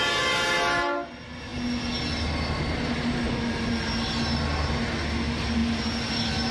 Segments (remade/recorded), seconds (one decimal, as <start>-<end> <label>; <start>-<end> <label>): 0.0-6.5 recorded